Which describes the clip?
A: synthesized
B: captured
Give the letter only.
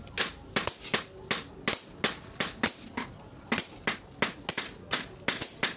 B